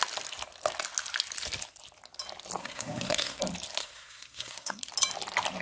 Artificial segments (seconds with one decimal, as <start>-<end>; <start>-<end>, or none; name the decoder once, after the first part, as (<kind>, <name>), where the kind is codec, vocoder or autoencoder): 2.6-3.4 (codec, SNAC); 3.8-4.8